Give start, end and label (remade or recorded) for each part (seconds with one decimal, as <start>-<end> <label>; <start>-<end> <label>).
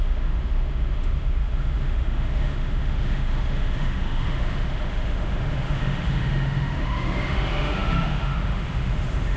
0.0-9.4 remade